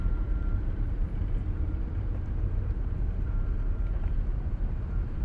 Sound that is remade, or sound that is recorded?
remade